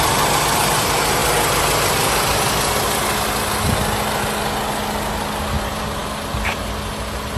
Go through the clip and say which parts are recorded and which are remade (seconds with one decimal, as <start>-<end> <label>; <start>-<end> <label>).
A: 0.0-1.2 remade; 1.2-5.6 recorded; 5.6-6.0 remade; 6.0-6.9 recorded; 6.9-7.4 remade